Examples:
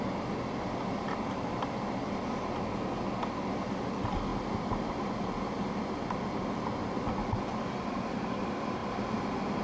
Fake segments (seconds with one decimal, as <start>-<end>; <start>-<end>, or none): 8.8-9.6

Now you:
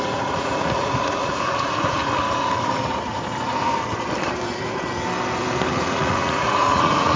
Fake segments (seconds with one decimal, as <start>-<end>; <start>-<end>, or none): 0.0-2.0; 5.7-7.2

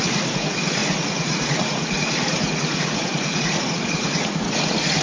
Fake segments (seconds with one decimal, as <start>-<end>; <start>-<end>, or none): 0.0-5.0

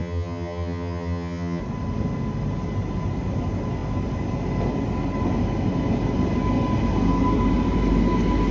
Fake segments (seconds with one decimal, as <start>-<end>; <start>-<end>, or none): 0.0-1.6

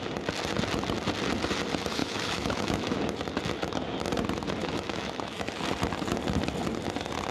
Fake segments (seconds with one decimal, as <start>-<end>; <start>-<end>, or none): 2.0-3.0; 4.6-5.5